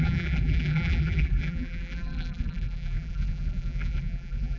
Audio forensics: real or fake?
fake